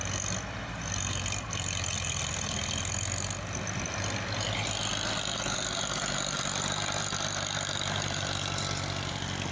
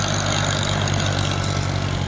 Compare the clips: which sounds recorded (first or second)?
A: second